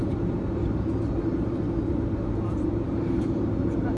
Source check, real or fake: real